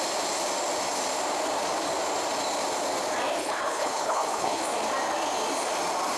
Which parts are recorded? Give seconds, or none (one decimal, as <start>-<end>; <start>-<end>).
0.0-3.4; 4.6-6.2